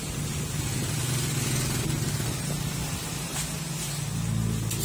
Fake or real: real